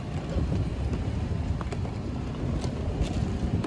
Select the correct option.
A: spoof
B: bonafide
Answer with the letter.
B